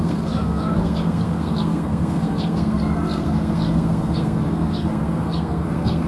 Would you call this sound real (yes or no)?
no